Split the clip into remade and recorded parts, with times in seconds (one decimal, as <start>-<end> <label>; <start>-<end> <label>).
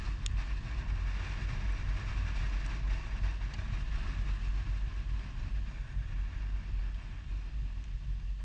0.0-8.4 recorded